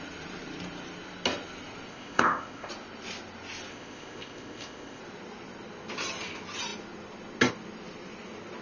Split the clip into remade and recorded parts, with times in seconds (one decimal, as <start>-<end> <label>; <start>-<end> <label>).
0.0-1.9 recorded; 1.9-2.7 remade; 2.7-3.7 recorded; 3.7-5.0 remade; 5.0-8.6 recorded